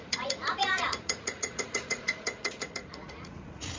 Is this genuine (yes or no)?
no